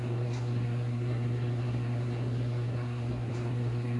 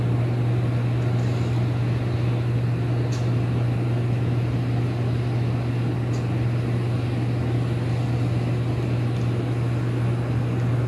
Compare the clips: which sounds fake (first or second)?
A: first